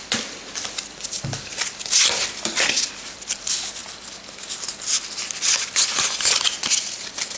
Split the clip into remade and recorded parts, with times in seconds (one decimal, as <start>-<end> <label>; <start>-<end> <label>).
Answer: 0.0-7.4 recorded